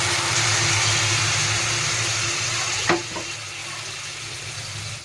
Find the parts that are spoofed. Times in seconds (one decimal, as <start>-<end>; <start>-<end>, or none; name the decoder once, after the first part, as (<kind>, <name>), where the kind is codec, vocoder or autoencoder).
none